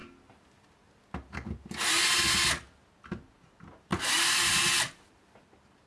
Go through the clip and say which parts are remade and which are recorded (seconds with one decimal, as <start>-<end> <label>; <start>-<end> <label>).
0.0-3.9 recorded; 3.9-5.1 remade; 5.1-5.9 recorded